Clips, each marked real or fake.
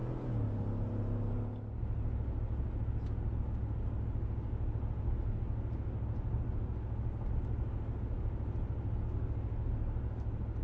real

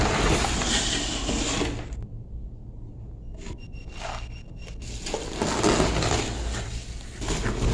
real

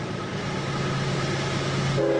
real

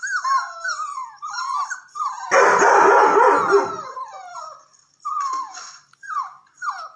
real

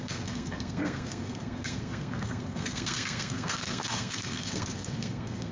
fake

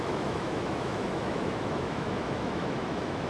fake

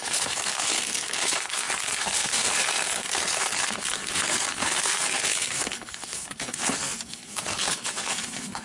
fake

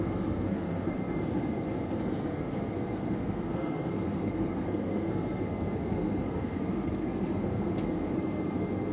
fake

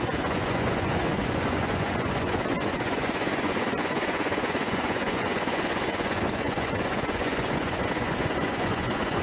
fake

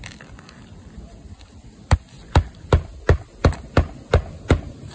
real